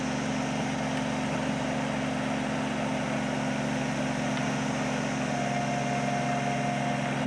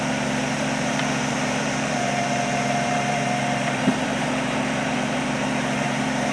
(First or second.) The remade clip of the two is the second